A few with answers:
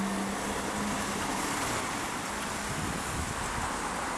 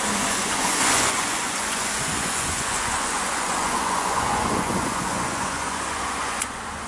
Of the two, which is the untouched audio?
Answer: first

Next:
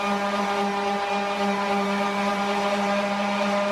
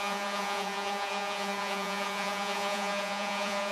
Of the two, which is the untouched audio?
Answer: first